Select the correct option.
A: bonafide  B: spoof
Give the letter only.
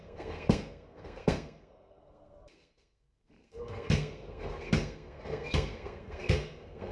B